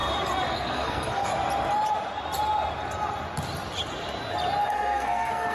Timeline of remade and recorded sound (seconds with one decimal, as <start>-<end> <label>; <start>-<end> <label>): 0.0-0.5 recorded; 0.5-1.3 remade; 1.3-4.6 recorded; 4.6-5.5 remade